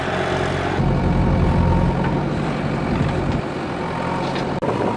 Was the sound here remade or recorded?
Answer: recorded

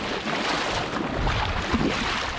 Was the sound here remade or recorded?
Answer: recorded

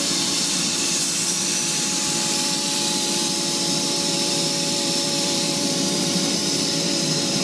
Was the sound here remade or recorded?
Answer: remade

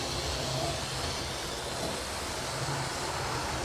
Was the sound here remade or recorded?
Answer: recorded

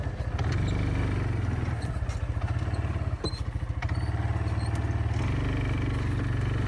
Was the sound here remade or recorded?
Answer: recorded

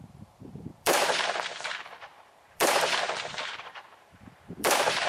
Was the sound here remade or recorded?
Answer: remade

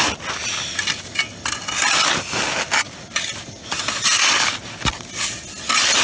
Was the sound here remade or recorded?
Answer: recorded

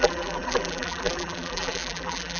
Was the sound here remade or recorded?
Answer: remade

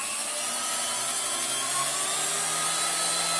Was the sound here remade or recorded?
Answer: recorded